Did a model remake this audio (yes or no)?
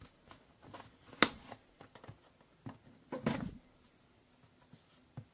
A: no